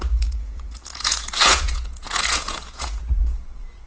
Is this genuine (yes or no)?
no